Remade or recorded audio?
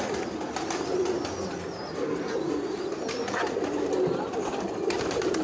recorded